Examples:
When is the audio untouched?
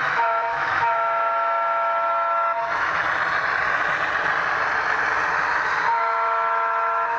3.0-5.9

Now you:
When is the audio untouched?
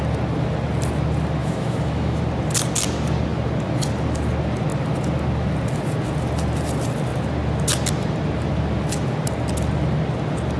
0.0-1.4; 2.2-10.6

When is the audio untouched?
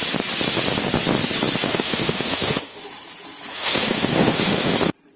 0.0-1.6; 2.8-3.5; 4.7-5.2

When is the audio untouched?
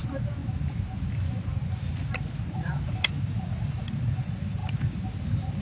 0.0-5.6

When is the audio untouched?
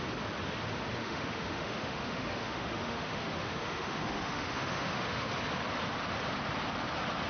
0.0-1.0; 5.3-7.3